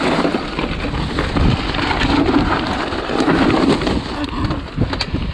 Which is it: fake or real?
real